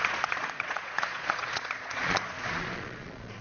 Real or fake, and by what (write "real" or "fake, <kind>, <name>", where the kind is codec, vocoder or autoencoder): fake, vocoder, Vocos